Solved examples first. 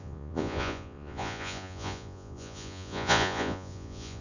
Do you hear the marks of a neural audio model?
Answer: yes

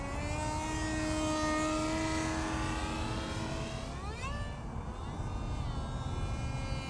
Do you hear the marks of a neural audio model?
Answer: no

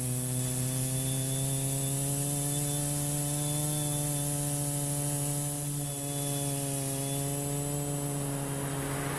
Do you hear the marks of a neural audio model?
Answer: no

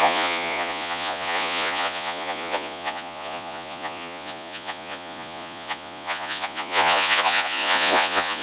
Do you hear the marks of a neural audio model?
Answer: yes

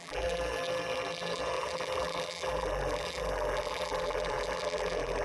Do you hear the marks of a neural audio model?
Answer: yes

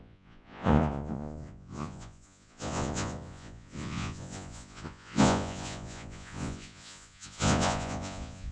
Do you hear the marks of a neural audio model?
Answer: yes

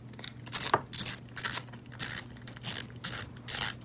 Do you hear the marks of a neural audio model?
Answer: no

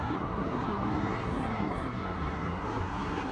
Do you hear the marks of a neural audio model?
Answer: yes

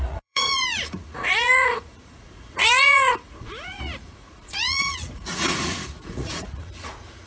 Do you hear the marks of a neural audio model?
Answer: yes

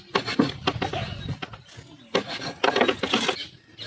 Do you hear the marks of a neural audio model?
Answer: no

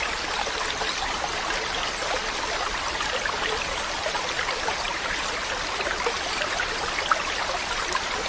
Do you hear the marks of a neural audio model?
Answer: yes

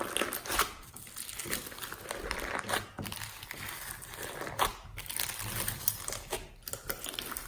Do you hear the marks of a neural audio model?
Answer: no